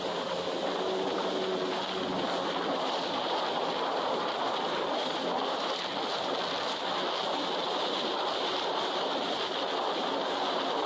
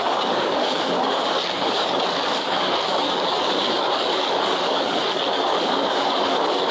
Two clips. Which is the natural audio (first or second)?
first